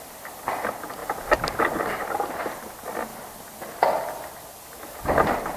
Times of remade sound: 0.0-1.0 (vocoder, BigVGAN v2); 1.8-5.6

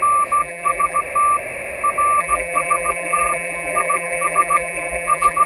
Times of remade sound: 0.4-1.0 (vocoder, BigVGAN v2); 2.2-5.5

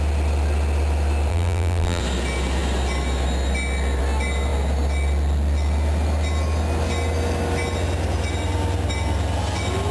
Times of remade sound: 1.3-2.0 (vocoder, BigVGAN v2)

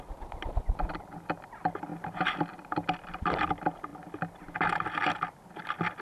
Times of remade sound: 1.9-2.4 (vocoder, BigVGAN v2)

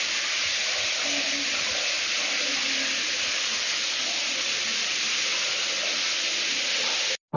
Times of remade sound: 4.7-5.7 (vocoder, BigVGAN v2)